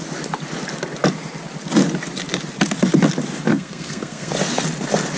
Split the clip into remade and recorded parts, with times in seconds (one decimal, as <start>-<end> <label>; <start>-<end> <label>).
0.0-3.5 recorded; 3.5-4.3 remade; 4.3-5.2 recorded